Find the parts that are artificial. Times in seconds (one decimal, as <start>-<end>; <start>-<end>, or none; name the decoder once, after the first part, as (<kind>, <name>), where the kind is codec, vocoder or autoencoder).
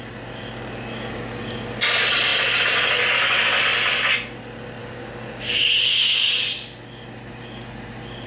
4.8-6.3 (codec, DAC)